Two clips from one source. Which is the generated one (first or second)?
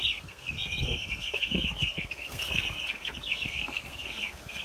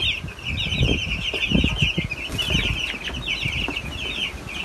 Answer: first